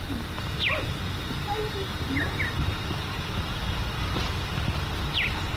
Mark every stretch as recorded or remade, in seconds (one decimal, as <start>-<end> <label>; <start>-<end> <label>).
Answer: 0.0-5.6 recorded